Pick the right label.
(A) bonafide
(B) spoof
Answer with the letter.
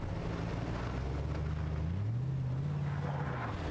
A